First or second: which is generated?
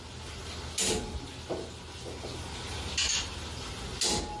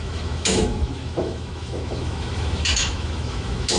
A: second